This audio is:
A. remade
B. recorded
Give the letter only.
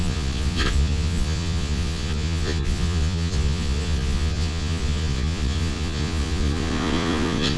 A